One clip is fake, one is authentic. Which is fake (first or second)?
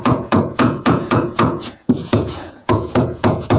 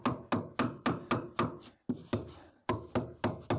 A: first